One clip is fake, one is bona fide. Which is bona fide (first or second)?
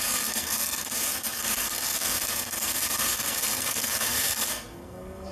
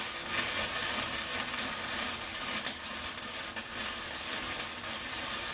second